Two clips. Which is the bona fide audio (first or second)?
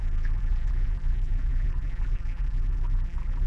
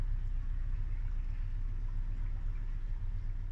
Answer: second